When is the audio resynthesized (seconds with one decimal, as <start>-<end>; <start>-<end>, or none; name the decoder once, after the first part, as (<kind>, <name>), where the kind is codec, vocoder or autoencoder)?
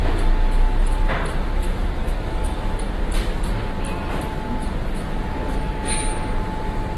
2.0-2.5 (codec, DAC)